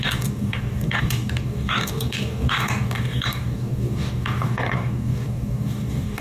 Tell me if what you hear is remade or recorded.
remade